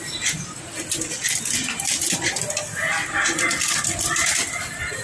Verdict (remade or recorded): recorded